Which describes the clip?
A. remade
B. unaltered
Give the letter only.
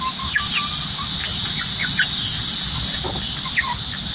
B